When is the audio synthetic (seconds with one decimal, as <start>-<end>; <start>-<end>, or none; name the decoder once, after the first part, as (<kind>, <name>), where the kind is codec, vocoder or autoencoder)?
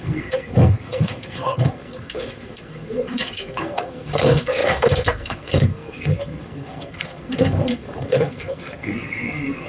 0.0-9.7 (codec, SNAC)